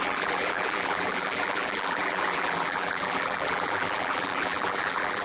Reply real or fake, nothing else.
fake